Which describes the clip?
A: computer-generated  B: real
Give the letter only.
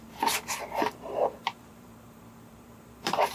A